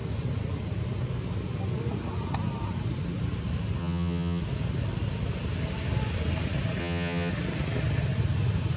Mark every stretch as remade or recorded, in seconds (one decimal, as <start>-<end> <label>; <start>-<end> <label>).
0.0-3.8 recorded; 3.8-4.4 remade; 4.4-6.8 recorded; 6.8-7.3 remade; 7.3-8.8 recorded